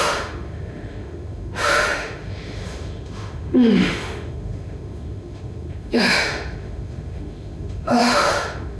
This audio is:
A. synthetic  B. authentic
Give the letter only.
A